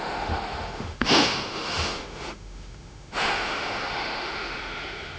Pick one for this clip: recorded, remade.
remade